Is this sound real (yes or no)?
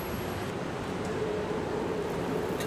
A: yes